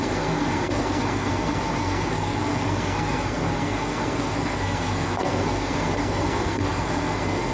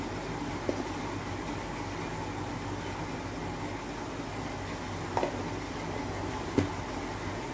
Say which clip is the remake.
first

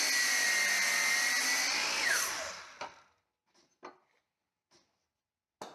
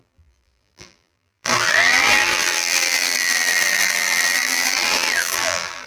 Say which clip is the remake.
second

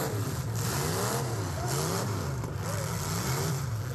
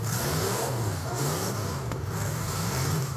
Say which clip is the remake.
second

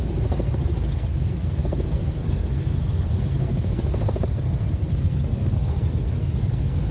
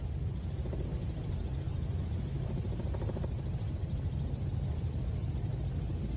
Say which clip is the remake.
first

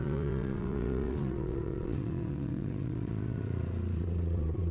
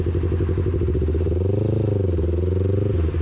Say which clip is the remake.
first